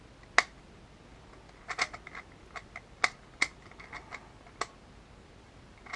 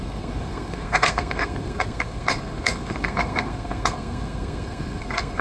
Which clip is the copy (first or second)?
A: second